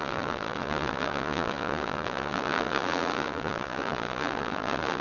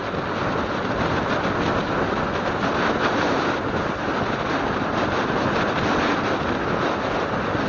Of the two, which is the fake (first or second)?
first